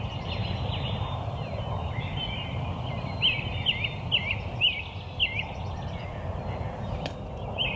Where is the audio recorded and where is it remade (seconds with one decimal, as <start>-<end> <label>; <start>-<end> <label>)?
0.0-0.4 remade; 0.4-1.1 recorded; 1.1-2.2 remade; 2.2-6.9 recorded; 6.9-7.8 remade